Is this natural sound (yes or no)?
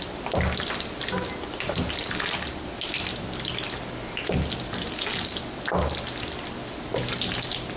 yes